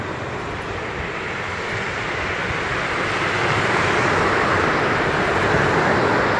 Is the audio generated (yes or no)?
no